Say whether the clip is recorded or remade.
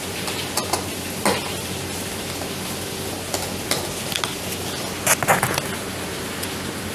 recorded